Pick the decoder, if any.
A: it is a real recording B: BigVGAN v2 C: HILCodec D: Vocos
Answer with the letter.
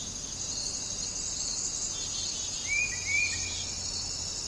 A